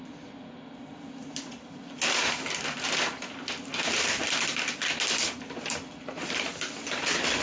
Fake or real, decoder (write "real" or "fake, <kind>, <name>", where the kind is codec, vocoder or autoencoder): real